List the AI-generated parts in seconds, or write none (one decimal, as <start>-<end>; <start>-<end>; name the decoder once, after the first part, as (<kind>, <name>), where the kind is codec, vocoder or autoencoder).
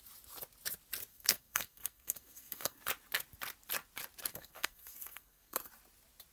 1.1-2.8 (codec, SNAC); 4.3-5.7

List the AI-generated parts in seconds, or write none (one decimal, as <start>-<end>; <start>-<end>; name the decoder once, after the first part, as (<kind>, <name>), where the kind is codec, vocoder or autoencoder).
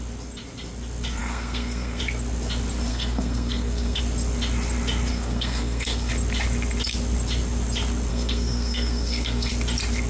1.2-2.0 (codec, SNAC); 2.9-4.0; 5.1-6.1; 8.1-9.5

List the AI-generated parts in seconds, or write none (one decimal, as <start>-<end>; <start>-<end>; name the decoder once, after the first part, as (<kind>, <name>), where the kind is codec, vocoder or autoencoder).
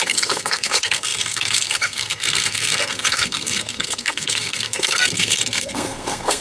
0.0-6.4 (codec, SNAC)